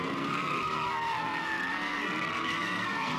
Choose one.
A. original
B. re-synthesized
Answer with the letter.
B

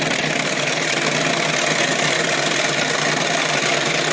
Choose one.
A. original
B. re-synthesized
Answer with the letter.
A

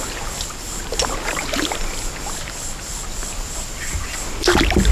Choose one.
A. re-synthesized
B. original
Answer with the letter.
B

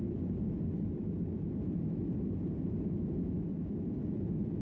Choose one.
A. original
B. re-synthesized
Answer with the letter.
A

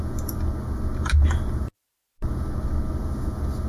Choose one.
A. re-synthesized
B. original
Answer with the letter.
B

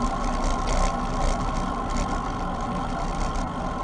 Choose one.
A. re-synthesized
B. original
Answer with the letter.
B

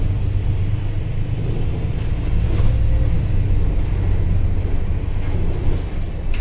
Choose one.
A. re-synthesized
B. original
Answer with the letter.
B